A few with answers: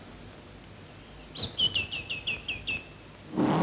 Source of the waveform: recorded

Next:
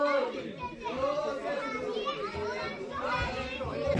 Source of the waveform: recorded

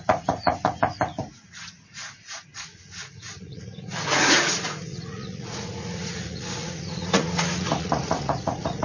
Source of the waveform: remade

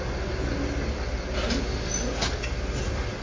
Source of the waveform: recorded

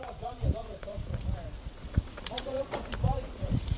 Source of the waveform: remade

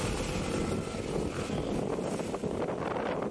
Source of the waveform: recorded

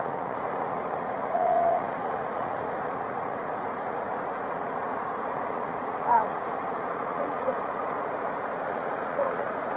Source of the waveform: remade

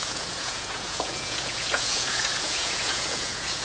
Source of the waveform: remade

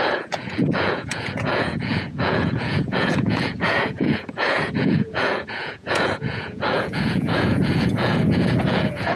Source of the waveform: remade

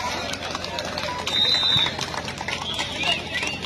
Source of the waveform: recorded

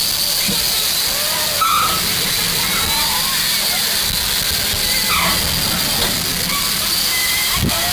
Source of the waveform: recorded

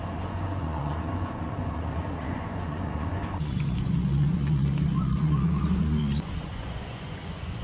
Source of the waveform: remade